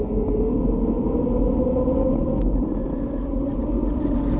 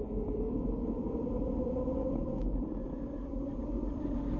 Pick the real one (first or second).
first